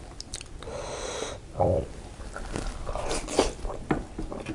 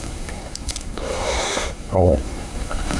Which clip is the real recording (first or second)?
first